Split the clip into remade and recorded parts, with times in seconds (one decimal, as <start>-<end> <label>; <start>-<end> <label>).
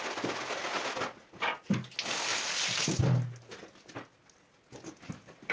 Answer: 0.0-5.5 recorded